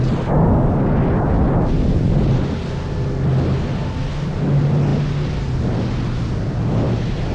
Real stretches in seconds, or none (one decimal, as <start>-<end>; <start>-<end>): 0.0-7.3